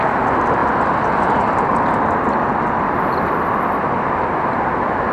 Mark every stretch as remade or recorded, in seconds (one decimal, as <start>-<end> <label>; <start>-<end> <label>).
0.0-5.1 recorded